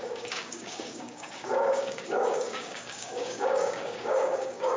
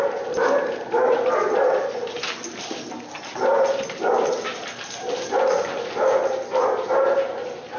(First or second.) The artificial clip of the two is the first